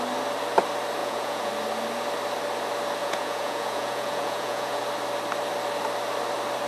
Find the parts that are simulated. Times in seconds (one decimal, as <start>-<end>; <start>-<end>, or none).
1.0-1.5; 3.0-4.8

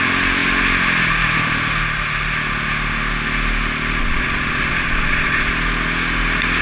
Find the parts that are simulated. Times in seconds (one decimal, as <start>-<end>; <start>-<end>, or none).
4.0-5.5